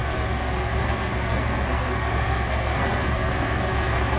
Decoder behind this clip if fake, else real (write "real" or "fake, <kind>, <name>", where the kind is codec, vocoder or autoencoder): fake, codec, SNAC